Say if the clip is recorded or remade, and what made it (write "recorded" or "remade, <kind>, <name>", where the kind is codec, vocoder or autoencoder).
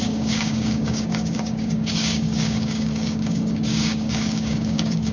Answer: remade, codec, DAC